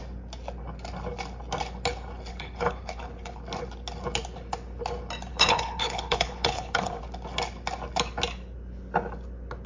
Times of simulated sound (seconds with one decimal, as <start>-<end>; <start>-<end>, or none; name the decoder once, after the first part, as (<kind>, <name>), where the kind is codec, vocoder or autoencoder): 2.3-3.4 (codec, HILCodec); 5.3-7.0